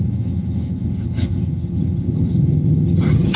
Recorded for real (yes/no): no